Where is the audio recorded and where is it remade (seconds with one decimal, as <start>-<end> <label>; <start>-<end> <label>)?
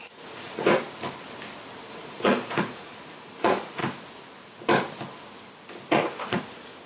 0.0-0.7 remade; 0.7-1.9 recorded; 1.9-3.8 remade; 3.8-5.9 recorded; 5.9-6.9 remade